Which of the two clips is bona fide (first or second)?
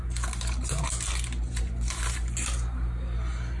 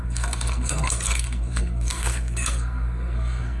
first